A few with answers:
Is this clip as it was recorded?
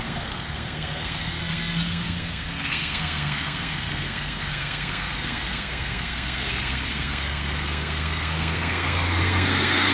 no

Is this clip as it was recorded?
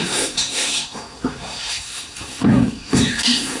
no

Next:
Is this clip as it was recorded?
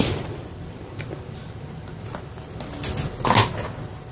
yes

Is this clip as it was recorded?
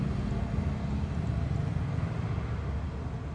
yes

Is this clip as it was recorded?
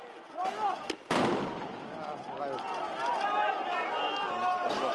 yes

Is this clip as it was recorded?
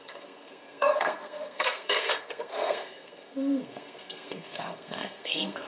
no